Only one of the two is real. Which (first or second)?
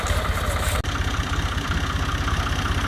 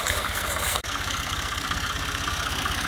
first